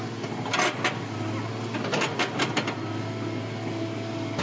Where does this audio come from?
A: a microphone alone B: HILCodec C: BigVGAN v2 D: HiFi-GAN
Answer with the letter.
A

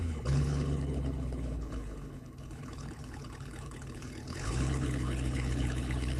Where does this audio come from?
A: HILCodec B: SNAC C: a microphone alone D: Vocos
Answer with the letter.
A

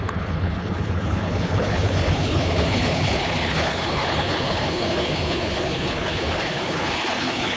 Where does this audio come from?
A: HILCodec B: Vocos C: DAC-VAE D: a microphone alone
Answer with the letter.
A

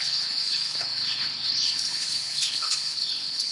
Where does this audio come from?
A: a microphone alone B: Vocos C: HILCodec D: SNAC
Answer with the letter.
C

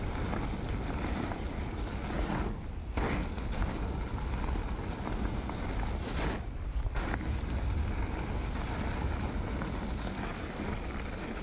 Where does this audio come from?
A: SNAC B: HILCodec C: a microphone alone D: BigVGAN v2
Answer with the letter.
C